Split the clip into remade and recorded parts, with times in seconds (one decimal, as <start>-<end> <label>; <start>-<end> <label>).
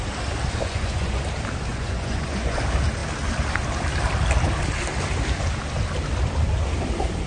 0.0-0.6 recorded; 0.6-1.2 remade; 1.2-1.7 recorded; 1.7-2.6 remade; 2.6-7.3 recorded